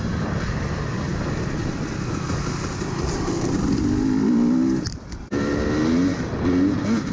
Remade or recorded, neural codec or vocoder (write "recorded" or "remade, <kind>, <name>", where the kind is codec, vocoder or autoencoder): recorded